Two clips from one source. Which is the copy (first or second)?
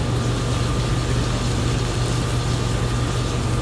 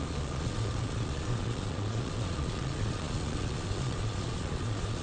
second